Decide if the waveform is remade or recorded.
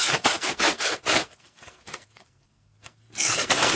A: remade